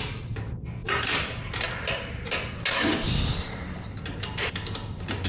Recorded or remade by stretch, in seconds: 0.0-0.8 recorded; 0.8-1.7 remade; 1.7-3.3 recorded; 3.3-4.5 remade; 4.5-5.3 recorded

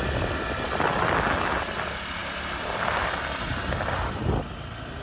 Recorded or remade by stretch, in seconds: 0.0-5.0 recorded

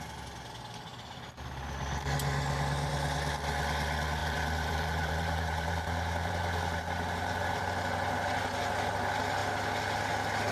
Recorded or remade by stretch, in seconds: 0.0-4.2 recorded; 4.2-7.6 remade; 7.6-10.5 recorded

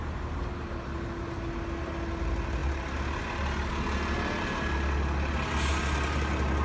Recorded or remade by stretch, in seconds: 0.0-6.6 recorded